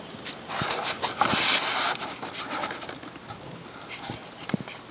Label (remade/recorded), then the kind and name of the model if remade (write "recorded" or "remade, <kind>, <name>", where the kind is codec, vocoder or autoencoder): recorded